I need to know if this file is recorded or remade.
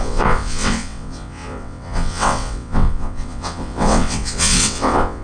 remade